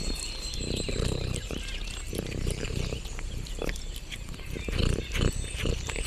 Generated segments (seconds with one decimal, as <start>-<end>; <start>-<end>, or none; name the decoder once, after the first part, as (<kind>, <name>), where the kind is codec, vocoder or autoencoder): 0.0-4.8 (vocoder, BigVGAN v2); 5.5-6.1